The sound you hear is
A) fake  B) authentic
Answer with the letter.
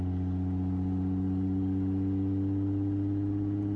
B